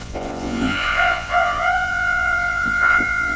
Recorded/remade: remade